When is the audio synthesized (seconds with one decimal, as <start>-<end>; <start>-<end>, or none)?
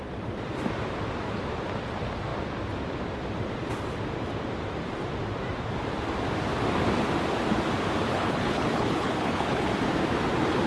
8.1-9.7